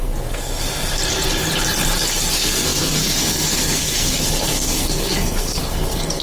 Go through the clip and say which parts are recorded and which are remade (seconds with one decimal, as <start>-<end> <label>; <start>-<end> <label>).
0.0-0.5 remade; 0.5-2.3 recorded; 2.3-6.2 remade